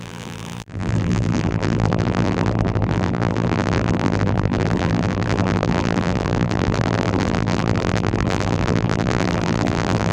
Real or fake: fake